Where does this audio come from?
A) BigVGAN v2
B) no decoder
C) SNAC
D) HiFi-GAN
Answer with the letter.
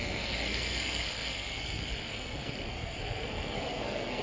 C